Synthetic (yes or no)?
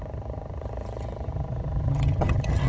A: yes